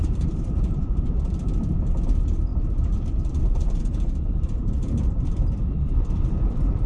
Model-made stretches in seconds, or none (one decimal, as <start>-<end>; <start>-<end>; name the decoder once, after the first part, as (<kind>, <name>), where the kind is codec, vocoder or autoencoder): 0.0-6.9 (vocoder, BigVGAN v2)